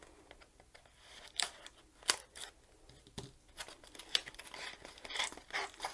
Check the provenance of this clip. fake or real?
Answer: real